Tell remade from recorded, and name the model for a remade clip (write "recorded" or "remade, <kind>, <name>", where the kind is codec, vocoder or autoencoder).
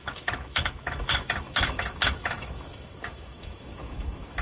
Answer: remade, autoencoder, DAC-VAE